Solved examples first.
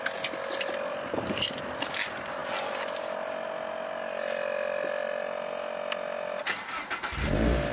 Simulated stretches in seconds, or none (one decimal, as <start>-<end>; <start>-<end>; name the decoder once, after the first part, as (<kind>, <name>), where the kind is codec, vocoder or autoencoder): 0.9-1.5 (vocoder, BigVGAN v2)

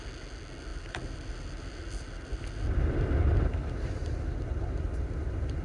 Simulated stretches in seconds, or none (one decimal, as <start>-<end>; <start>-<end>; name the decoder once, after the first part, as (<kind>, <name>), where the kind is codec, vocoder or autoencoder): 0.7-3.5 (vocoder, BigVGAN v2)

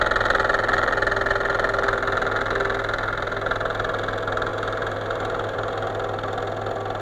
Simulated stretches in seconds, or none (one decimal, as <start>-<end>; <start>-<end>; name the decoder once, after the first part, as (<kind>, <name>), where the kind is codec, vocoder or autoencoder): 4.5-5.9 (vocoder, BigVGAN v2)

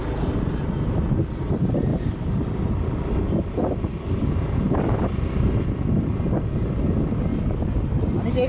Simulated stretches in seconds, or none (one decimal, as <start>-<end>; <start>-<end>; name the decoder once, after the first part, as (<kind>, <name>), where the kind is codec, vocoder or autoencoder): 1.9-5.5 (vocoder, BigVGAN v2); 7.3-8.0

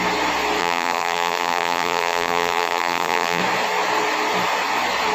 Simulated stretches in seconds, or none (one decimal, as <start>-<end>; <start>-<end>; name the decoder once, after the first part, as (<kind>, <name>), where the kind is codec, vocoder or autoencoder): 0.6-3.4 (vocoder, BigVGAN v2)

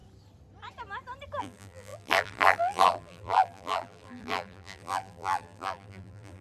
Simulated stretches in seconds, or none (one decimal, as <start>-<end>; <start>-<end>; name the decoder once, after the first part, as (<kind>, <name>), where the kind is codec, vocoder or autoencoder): 1.4-6.4 (vocoder, BigVGAN v2)

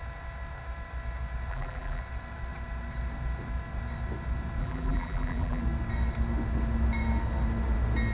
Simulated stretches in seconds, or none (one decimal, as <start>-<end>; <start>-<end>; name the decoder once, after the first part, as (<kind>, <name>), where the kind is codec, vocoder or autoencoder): 1.5-2.0 (vocoder, BigVGAN v2); 4.6-5.6